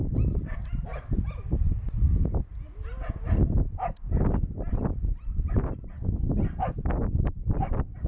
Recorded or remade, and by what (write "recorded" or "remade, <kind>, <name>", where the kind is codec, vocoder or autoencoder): recorded